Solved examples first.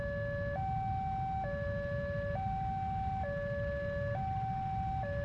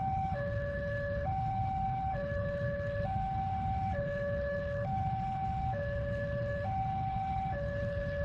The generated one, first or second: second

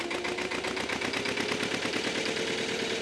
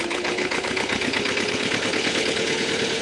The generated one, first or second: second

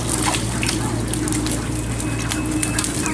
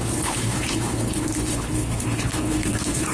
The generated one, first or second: second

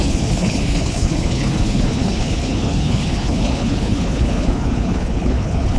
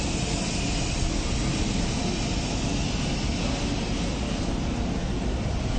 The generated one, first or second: first